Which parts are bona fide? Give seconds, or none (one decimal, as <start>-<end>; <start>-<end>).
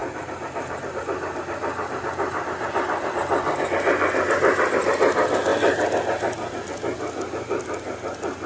1.0-8.5